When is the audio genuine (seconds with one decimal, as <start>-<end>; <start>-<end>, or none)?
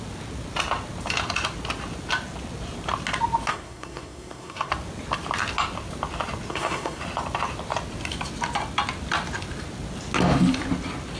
0.0-3.5; 4.7-6.5; 7.0-11.2